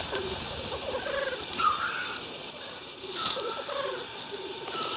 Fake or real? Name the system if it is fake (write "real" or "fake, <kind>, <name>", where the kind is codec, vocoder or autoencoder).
real